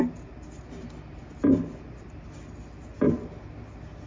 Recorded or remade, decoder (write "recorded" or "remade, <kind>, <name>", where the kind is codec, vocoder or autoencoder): recorded